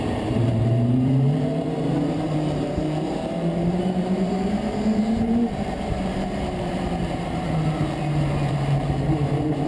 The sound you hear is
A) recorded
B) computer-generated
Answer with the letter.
B